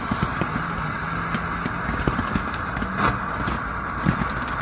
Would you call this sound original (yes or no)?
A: yes